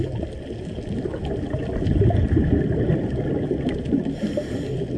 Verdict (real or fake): real